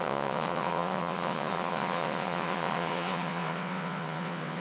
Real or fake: fake